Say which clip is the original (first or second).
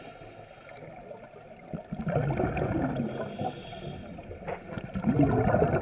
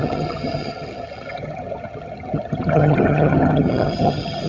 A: first